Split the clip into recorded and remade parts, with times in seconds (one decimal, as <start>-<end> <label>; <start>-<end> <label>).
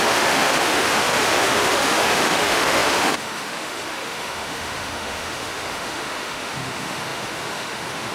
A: 0.0-8.1 remade